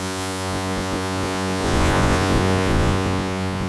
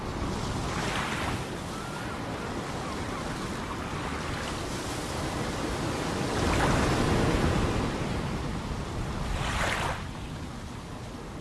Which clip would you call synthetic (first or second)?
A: first